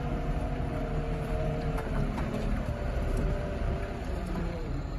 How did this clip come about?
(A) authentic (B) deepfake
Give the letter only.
B